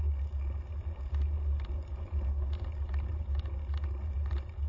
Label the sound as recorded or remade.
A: recorded